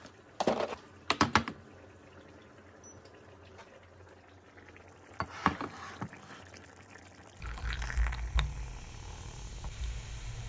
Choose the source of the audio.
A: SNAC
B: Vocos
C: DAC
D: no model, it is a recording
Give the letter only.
D